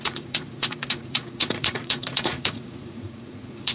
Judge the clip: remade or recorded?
remade